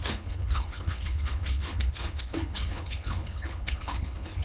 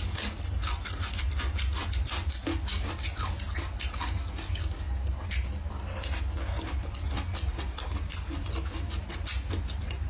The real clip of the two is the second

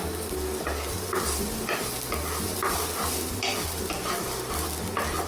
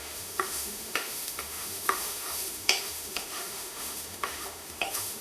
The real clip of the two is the first